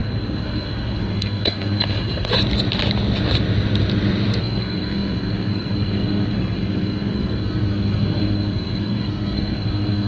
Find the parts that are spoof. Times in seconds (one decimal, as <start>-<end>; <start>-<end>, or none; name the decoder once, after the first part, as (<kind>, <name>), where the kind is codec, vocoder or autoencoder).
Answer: 0.0-2.3 (codec, SNAC); 4.4-10.1